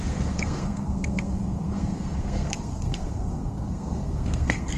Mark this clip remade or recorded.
remade